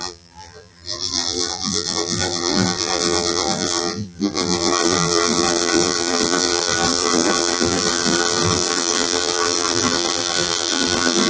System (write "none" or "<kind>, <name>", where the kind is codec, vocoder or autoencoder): vocoder, BigVGAN v2